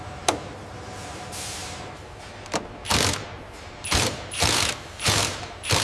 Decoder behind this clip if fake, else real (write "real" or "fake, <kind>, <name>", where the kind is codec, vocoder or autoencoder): fake, vocoder, BigVGAN v2